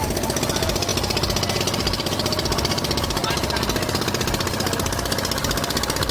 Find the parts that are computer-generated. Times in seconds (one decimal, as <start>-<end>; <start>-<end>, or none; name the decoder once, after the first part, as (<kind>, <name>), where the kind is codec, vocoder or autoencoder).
none